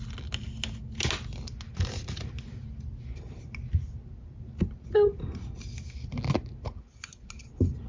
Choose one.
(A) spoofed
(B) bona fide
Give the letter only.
B